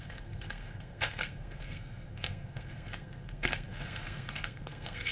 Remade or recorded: remade